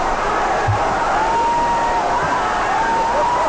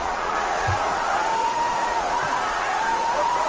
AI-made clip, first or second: second